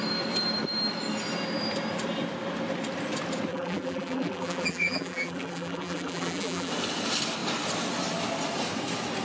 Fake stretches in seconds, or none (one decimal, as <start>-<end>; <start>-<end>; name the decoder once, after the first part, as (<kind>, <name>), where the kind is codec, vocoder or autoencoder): 3.5-6.7 (vocoder, BigVGAN v2)